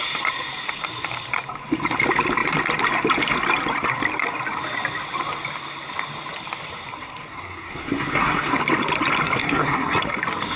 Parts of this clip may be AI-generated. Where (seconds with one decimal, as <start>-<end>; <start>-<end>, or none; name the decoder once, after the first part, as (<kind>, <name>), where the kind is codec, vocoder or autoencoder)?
7.3-8.6 (codec, SNAC); 9.4-10.0